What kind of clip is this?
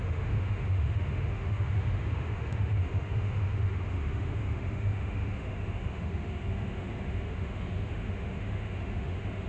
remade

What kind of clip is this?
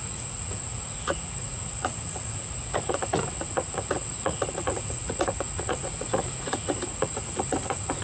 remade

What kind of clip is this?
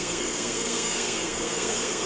remade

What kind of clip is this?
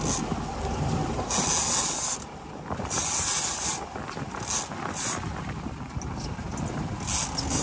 recorded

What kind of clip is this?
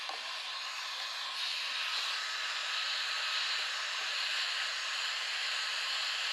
recorded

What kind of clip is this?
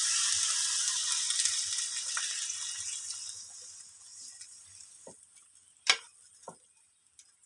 recorded